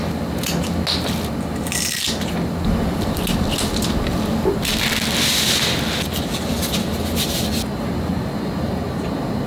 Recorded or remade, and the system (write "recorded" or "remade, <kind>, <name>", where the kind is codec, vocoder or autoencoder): recorded